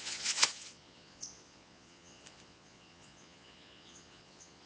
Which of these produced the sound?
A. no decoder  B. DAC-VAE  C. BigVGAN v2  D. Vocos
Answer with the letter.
D